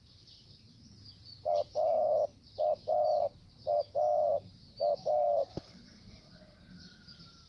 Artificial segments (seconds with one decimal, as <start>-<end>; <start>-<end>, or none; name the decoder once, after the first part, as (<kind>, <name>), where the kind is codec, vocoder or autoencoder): 0.0-7.5 (vocoder, BigVGAN v2)